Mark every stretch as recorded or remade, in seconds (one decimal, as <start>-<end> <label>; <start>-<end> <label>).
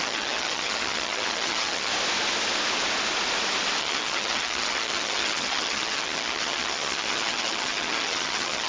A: 0.0-1.9 remade; 1.9-3.8 recorded; 3.8-8.7 remade